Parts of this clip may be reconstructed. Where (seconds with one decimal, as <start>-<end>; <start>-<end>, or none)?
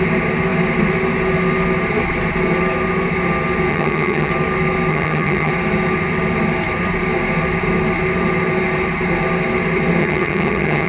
3.7-4.3; 4.9-5.5; 10.0-10.9